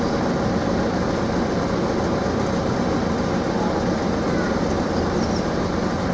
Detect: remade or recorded recorded